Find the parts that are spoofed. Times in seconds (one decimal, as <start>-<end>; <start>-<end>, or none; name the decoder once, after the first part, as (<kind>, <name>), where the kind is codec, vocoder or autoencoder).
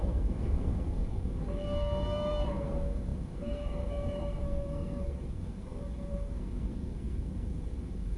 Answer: 0.0-8.2 (codec, SNAC)